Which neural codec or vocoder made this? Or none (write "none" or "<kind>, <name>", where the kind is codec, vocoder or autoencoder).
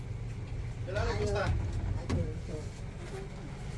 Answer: none